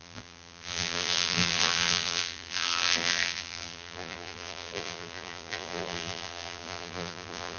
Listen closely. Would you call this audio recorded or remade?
remade